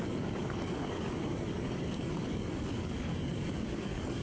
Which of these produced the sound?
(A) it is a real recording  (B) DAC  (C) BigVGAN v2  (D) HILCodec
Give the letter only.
B